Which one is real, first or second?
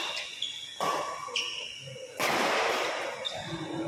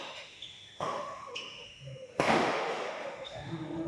first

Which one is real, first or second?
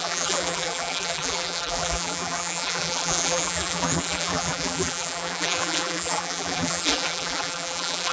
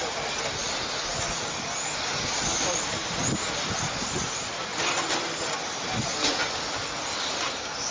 second